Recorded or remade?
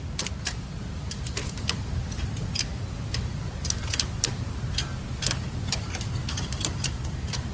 remade